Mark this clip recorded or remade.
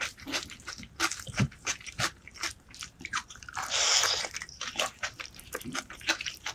remade